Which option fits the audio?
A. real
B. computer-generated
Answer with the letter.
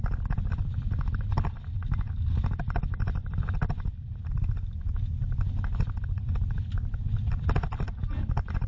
A